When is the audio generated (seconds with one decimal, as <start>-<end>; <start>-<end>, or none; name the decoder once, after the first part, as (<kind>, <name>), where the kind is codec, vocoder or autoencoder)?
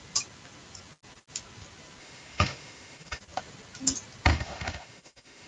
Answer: 2.0-3.2 (autoencoder, DAC-VAE); 4.3-5.5